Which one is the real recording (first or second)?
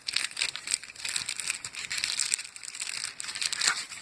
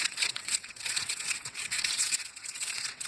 first